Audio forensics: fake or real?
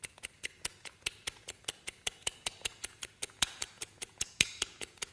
fake